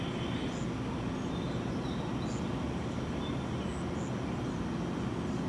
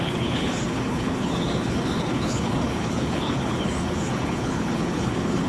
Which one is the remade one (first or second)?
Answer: second